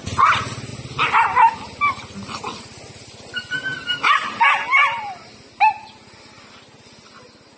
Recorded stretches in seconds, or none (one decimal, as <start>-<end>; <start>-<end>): 0.0-7.6